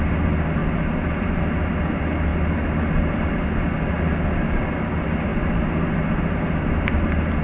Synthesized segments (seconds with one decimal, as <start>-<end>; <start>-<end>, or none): none